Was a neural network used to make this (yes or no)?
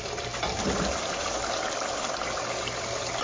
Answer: no